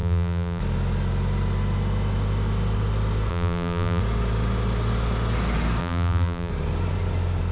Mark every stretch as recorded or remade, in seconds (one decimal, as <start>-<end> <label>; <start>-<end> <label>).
0.0-0.6 remade; 0.6-3.3 recorded; 3.3-4.0 remade; 4.0-5.8 recorded; 5.8-6.5 remade; 6.5-7.5 recorded